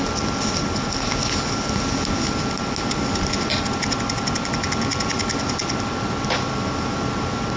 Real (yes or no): yes